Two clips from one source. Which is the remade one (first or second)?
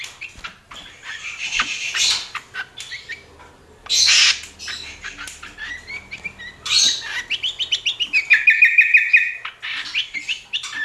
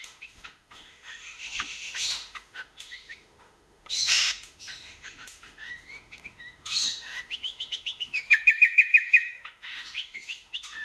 second